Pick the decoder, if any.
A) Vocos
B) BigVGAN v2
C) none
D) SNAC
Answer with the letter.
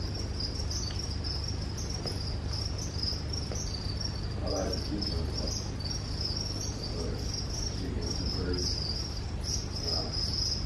C